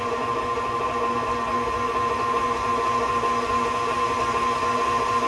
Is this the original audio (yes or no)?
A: yes